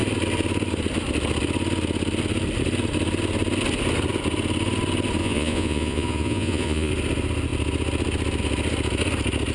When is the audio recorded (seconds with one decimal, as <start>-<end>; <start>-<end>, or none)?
0.0-5.2; 6.9-9.5